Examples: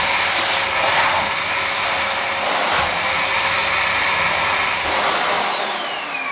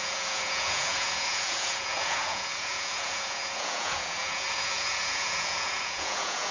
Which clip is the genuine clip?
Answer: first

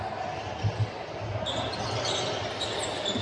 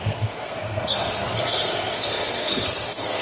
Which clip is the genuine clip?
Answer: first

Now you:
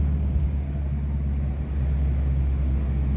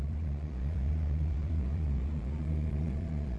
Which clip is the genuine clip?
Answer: first